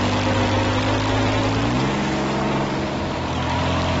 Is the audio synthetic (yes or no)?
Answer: no